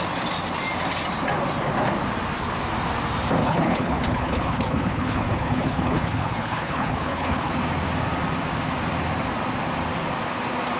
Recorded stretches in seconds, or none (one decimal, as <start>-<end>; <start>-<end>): 0.0-3.4; 7.5-10.8